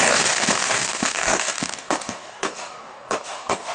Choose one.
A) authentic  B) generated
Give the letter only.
B